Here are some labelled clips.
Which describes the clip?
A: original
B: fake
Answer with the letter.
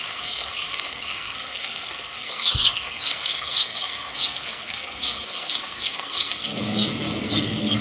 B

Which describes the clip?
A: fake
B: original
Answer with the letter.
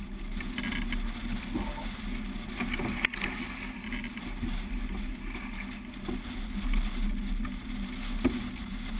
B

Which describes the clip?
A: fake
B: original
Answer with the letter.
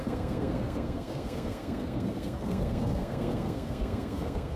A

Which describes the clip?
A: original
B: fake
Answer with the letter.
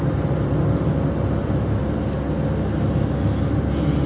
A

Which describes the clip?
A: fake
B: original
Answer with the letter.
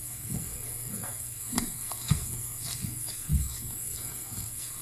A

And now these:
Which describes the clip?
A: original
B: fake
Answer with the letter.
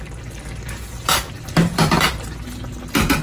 A